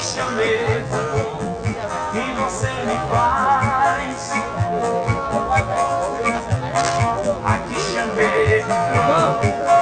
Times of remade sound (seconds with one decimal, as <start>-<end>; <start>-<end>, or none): 0.0-9.8